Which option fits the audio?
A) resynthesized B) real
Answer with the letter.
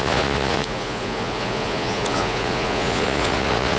A